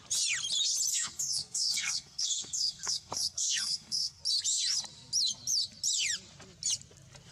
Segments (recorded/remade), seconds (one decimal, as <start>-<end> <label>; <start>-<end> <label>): 0.0-0.9 recorded; 0.9-4.2 remade; 4.2-7.3 recorded